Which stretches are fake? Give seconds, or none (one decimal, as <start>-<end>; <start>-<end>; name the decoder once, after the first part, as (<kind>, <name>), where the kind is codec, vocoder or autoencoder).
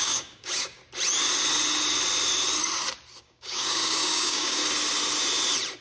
0.0-0.8 (codec, DAC); 3.2-4.6